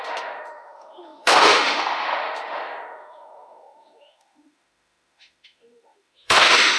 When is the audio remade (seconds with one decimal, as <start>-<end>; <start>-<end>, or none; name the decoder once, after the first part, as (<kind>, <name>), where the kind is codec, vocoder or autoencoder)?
0.0-6.8 (autoencoder, DAC-VAE)